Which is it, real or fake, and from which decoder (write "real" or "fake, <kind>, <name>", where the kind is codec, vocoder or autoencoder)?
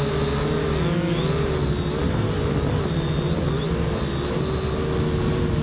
real